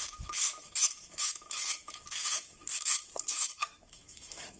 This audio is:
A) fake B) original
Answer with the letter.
A